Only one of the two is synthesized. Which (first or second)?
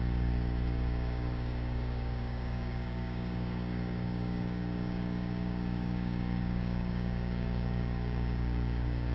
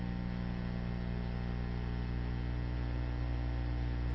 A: first